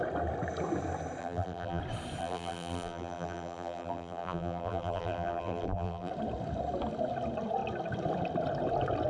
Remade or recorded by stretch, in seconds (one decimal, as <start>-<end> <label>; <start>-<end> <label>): 0.0-1.2 recorded; 1.2-1.8 remade; 1.8-2.2 recorded; 2.2-6.1 remade; 6.1-9.1 recorded

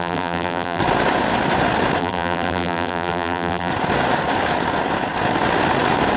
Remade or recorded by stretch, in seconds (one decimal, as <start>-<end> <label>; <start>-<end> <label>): 0.0-0.8 remade; 0.8-2.0 recorded; 2.0-3.7 remade; 3.7-6.2 recorded

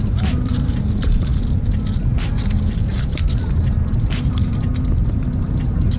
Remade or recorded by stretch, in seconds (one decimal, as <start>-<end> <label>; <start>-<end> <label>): 0.0-1.3 remade; 1.3-2.9 recorded; 2.9-6.0 remade

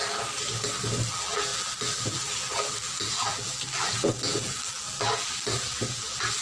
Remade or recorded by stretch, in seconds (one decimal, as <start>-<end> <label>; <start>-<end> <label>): 0.0-1.1 recorded; 1.1-6.4 remade

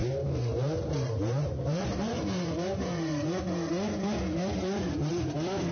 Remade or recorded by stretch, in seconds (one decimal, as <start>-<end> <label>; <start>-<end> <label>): 0.0-3.4 remade; 3.4-5.7 recorded

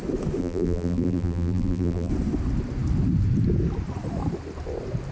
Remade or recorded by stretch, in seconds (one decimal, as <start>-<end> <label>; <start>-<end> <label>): 0.0-0.4 recorded; 0.4-2.1 remade; 2.1-5.1 recorded